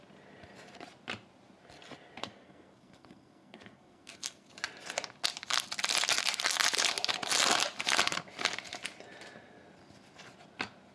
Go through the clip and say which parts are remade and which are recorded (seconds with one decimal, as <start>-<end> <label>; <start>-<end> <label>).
0.0-2.2 recorded; 2.2-4.5 remade; 4.5-10.9 recorded